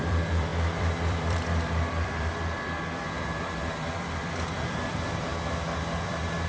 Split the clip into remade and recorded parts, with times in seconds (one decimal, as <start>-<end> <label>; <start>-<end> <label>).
0.0-5.3 remade; 5.3-5.8 recorded; 5.8-6.5 remade